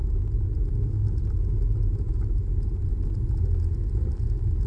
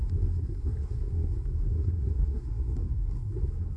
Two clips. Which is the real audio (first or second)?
first